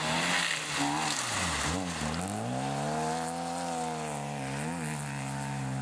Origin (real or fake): real